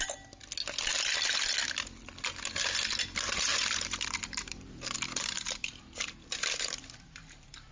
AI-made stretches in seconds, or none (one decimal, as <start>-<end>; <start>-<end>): 3.5-7.7